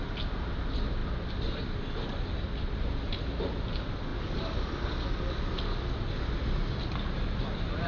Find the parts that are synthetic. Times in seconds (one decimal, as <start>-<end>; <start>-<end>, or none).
none